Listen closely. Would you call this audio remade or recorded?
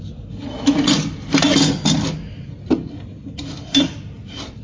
recorded